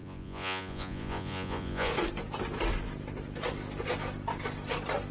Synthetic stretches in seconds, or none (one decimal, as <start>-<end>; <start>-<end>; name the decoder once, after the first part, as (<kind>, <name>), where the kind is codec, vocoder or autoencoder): 0.0-1.9 (vocoder, Vocos)